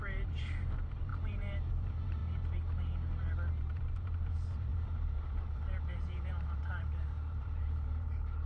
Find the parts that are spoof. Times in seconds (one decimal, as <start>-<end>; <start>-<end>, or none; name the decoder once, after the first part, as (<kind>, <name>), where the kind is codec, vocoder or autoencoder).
0.0-2.2 (vocoder, BigVGAN v2); 3.5-8.5